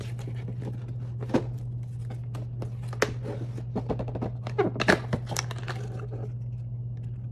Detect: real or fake real